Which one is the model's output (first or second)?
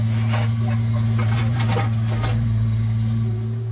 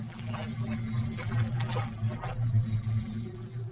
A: second